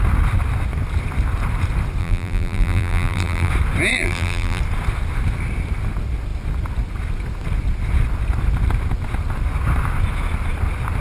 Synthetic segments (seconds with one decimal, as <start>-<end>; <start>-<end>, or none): 2.0-3.5; 3.9-4.6